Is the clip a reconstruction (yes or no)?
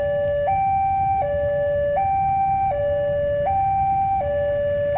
no